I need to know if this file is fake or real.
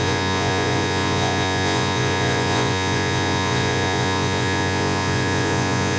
fake